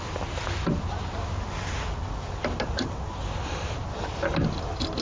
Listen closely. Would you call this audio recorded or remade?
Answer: recorded